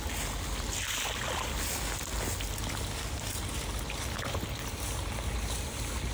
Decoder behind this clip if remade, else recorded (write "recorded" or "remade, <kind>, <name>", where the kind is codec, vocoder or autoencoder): recorded